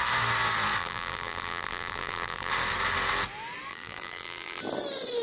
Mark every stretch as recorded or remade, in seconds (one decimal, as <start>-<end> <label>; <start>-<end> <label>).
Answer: 0.0-0.8 recorded; 0.8-2.5 remade; 2.5-3.7 recorded; 3.7-4.6 remade; 4.6-5.2 recorded